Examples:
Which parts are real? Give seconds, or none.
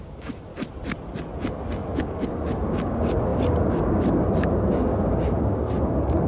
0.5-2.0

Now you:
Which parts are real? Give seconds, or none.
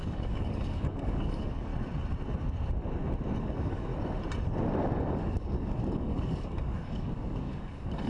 1.7-3.4; 3.9-4.8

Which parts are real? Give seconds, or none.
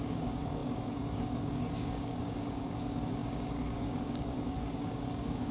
none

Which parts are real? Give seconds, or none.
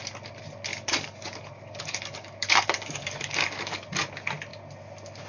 0.0-0.7; 3.9-5.3